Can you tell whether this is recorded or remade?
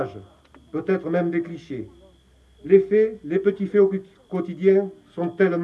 recorded